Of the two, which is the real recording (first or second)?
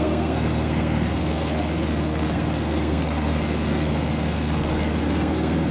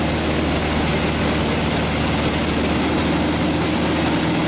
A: second